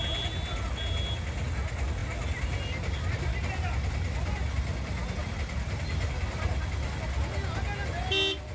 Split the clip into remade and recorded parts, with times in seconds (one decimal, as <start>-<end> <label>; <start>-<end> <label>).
0.0-8.5 recorded